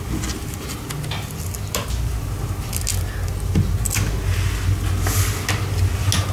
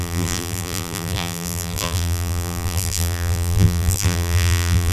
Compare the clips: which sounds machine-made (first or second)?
second